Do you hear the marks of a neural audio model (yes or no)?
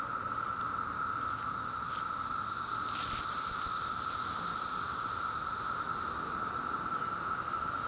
no